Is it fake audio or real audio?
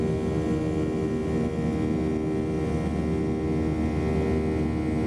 real